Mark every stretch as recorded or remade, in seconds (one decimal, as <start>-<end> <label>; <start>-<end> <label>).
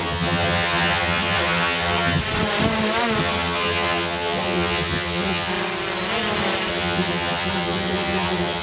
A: 0.0-2.2 remade; 2.2-3.2 recorded; 3.2-5.5 remade; 5.5-6.7 recorded; 6.7-8.6 remade